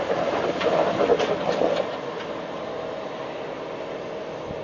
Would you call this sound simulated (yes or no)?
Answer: no